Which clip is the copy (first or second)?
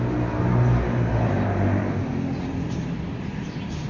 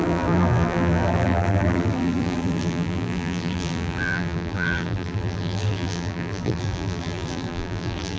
second